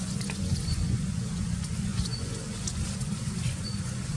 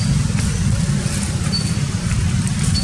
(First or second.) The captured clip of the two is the second